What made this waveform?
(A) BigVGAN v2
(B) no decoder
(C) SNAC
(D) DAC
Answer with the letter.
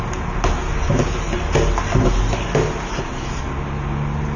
B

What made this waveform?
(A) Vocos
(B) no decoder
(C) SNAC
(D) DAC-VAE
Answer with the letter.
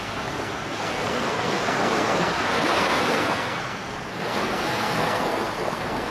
C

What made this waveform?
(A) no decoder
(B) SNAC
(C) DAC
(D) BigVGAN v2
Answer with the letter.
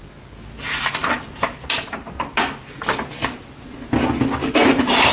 A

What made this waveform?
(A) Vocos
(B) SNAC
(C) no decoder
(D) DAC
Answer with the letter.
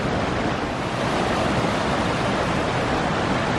C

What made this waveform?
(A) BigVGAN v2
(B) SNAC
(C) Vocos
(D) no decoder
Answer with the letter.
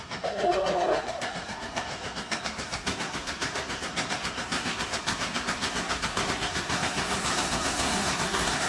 B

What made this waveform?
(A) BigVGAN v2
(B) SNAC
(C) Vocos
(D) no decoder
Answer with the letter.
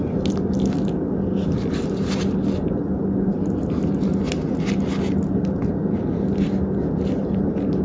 D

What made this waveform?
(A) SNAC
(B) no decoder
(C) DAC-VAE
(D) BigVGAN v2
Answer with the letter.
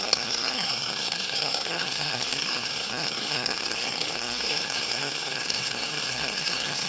A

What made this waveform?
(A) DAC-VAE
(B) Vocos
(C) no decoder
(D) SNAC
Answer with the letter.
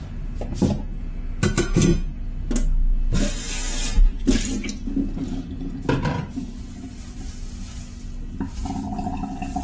C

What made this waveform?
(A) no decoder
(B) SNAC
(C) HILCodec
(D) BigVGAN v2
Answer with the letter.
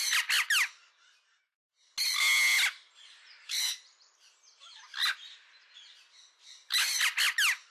A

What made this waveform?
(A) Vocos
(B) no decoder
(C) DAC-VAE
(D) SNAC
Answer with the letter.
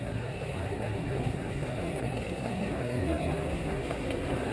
D